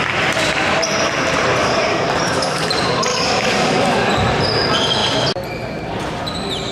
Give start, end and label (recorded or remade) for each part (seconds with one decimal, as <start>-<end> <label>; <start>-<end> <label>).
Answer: 0.0-1.6 recorded; 1.6-2.7 remade; 2.7-3.1 recorded; 3.1-4.1 remade; 4.1-6.7 recorded